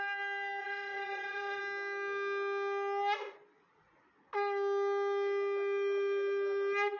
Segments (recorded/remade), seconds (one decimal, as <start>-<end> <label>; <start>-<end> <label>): 0.0-0.6 recorded; 0.6-1.6 remade; 1.6-7.0 recorded